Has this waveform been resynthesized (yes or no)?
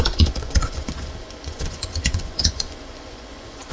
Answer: yes